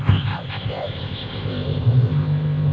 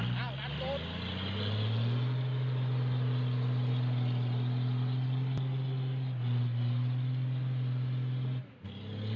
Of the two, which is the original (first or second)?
second